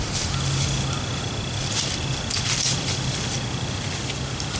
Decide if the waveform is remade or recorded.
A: recorded